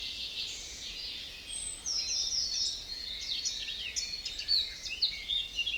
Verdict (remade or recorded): remade